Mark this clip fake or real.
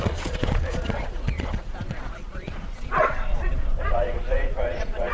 fake